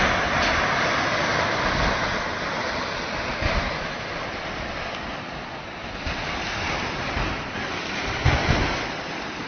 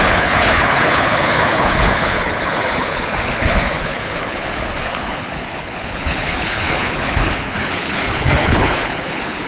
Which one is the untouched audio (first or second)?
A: first